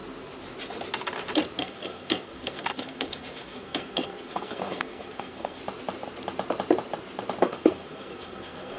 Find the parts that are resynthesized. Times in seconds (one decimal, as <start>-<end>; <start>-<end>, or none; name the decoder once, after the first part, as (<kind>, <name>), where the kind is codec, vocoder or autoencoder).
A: 1.6-5.6 (codec, SNAC); 7.4-8.8